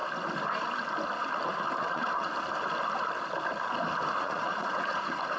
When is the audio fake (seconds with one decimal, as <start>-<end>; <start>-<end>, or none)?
1.8-2.3; 4.2-5.4